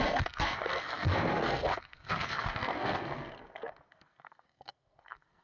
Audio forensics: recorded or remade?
remade